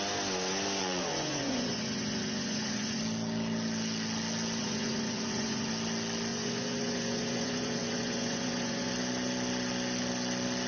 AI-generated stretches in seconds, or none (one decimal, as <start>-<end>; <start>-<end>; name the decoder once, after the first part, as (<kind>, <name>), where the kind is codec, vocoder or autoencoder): 0.8-3.0 (vocoder, Vocos); 4.6-5.7; 6.3-8.9